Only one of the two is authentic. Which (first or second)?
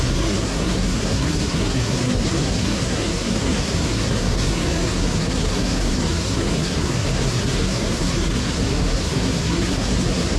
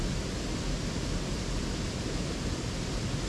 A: second